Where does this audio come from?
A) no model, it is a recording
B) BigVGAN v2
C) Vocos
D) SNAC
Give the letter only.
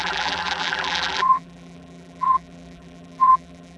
B